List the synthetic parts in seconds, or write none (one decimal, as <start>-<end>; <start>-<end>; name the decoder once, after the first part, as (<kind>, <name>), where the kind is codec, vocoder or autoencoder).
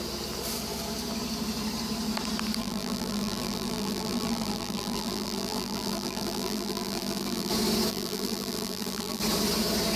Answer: 2.6-7.5 (vocoder, BigVGAN v2); 7.9-9.2